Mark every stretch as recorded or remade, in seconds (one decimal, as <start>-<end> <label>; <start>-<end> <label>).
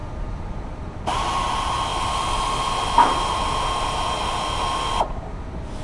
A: 0.0-0.7 remade; 0.7-5.8 recorded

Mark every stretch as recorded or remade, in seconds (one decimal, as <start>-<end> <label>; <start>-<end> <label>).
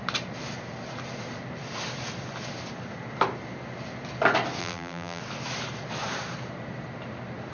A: 0.0-4.6 recorded; 4.6-5.2 remade; 5.2-7.5 recorded